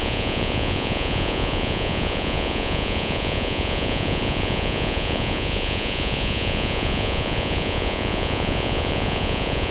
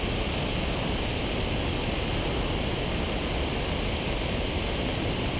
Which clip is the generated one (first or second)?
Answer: first